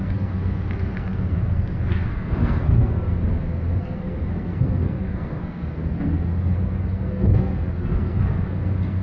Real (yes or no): no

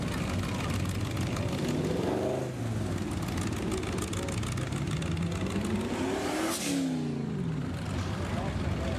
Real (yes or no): yes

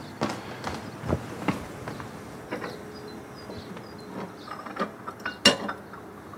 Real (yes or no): yes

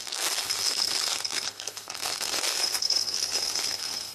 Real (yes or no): no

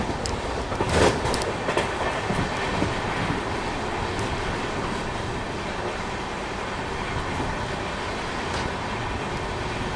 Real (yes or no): yes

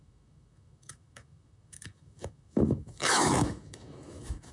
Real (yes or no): no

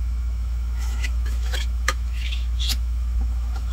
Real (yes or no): no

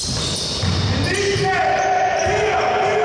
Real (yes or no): yes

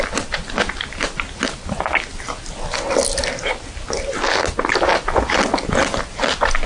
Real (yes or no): yes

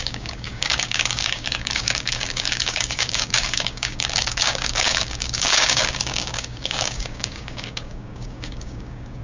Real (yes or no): no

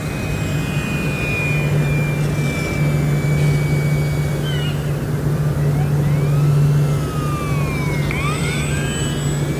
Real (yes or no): yes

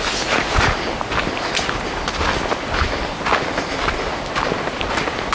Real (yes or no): yes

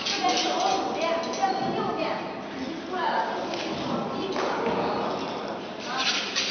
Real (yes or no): yes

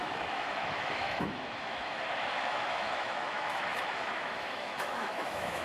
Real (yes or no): no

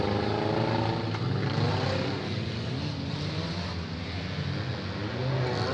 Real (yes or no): yes